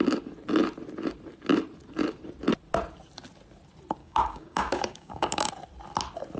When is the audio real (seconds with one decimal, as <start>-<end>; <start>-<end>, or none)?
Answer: 0.0-4.0; 5.5-6.4